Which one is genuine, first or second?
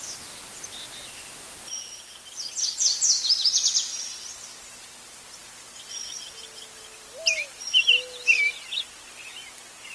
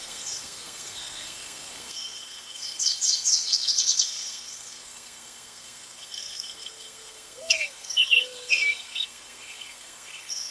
first